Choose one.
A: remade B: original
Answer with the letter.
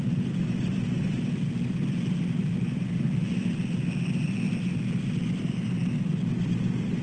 B